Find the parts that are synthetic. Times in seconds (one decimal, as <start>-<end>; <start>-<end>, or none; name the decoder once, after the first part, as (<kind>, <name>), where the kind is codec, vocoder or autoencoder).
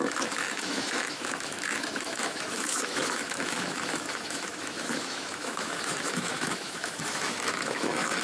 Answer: 0.0-8.2 (autoencoder, DAC-VAE)